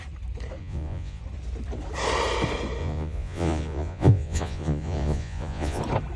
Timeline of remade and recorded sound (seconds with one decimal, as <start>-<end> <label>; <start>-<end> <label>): 0.0-0.6 recorded; 0.6-1.2 remade; 1.2-2.8 recorded; 2.8-5.8 remade; 5.8-6.2 recorded